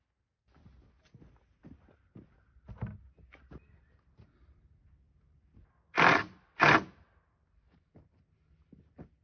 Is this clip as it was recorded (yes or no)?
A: yes